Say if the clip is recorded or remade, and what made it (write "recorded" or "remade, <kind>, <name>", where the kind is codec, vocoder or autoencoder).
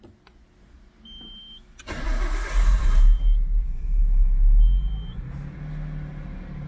recorded